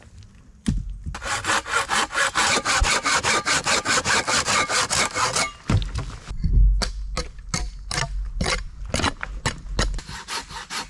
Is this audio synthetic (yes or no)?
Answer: no